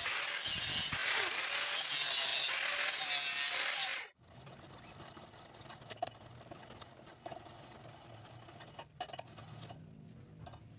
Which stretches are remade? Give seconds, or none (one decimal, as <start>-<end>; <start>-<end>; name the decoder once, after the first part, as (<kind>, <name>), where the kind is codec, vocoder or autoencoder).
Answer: none